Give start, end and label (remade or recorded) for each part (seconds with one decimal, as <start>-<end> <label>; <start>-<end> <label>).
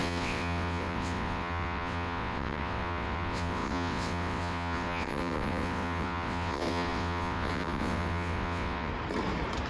0.0-8.9 remade; 8.9-9.7 recorded